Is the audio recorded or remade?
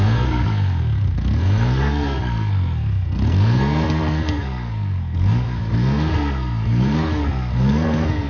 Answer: remade